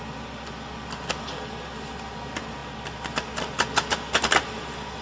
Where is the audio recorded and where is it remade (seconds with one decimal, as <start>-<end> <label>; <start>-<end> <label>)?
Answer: 0.0-5.0 recorded